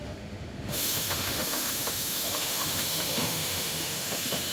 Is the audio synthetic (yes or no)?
yes